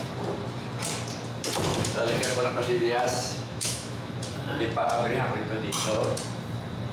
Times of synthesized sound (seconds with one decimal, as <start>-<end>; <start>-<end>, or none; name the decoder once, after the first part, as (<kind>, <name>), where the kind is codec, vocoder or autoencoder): 1.7-4.1 (autoencoder, DAC-VAE)